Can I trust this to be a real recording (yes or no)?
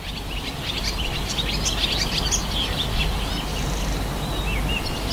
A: yes